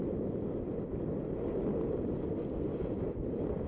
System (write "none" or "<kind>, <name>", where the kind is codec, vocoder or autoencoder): none